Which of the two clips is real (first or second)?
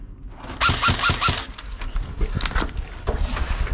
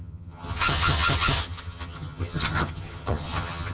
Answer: first